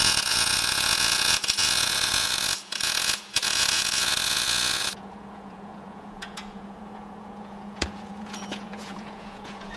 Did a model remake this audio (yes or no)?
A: yes